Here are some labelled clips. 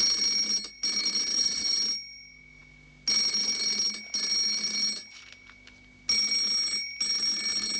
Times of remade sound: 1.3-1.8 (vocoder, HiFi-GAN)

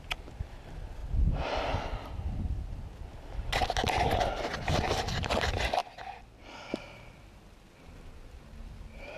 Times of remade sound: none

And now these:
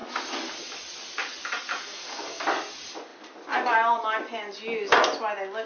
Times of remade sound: 1.8-2.4 (codec, SNAC)

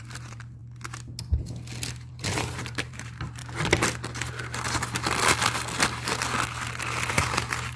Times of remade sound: 0.0-0.6 (vocoder, BigVGAN v2); 1.9-3.4; 7.1-7.8